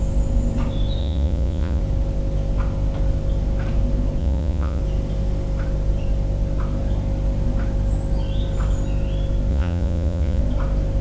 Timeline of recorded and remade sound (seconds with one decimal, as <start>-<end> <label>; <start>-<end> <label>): 0.0-1.0 recorded; 1.0-1.8 remade; 1.8-4.2 recorded; 4.2-4.8 remade; 4.8-9.5 recorded; 9.5-10.4 remade; 10.4-11.0 recorded